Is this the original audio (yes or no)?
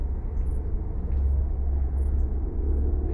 yes